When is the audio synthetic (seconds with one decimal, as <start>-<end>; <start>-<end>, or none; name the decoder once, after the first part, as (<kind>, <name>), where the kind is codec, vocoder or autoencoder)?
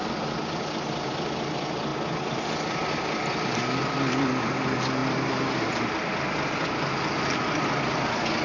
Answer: 3.8-4.3 (vocoder, BigVGAN v2)